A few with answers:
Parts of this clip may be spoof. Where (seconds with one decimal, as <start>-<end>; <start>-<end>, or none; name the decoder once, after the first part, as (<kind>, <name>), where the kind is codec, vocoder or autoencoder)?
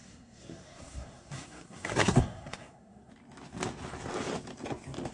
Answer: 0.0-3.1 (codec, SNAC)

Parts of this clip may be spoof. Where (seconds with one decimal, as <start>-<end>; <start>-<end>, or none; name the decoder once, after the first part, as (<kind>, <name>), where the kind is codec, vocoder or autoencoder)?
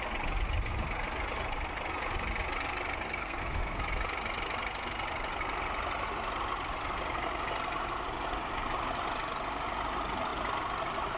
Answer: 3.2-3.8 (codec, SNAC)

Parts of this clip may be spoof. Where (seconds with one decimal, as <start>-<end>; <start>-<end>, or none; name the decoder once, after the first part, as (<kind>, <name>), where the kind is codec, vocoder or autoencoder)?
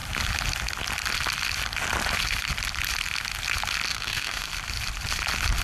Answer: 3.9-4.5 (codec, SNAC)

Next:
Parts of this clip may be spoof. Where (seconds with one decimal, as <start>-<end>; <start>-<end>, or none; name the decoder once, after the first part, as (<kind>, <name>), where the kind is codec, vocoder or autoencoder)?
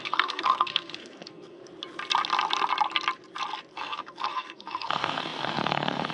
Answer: 0.0-1.6 (codec, SNAC); 3.7-6.1